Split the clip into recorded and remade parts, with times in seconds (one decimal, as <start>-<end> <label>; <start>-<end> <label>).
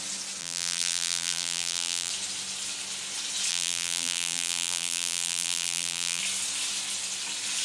0.0-0.4 recorded; 0.4-2.1 remade; 2.1-3.5 recorded; 3.5-6.2 remade; 6.2-7.6 recorded